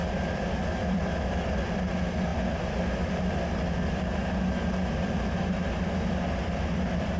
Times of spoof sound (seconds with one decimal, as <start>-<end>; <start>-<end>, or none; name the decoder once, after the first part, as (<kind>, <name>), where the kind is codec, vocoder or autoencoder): 0.0-1.9 (vocoder, BigVGAN v2); 2.3-4.2